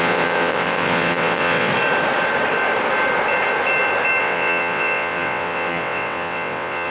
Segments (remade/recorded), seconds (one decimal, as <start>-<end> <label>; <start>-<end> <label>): 0.0-1.7 remade; 1.7-4.2 recorded; 4.2-6.9 remade